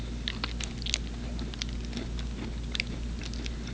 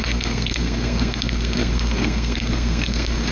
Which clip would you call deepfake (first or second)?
second